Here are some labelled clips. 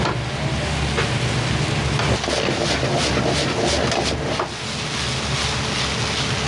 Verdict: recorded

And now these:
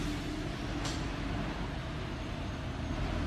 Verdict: recorded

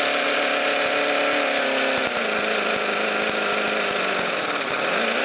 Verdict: recorded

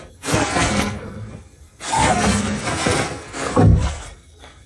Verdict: remade